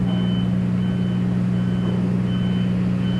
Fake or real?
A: real